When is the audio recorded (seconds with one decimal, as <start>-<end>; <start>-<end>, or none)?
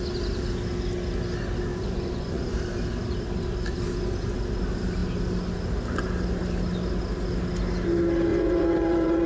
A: 0.0-1.7; 2.4-8.3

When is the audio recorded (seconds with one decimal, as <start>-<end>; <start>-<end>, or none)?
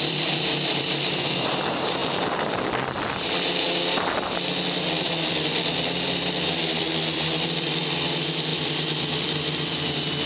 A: 2.0-5.0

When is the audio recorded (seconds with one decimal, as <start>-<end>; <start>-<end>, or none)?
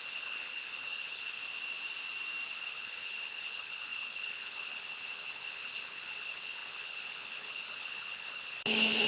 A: 1.4-2.6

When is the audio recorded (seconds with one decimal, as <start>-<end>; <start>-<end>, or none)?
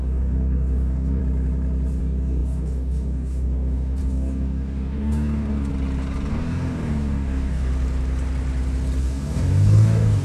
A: 1.2-2.0; 5.7-6.3; 7.7-9.0